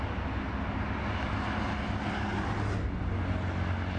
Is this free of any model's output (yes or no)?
yes